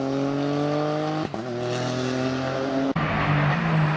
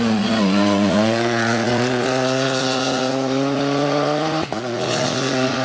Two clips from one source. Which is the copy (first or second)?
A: second